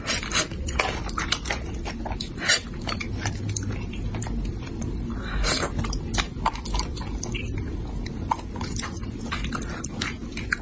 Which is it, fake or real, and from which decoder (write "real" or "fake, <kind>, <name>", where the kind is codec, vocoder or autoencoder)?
real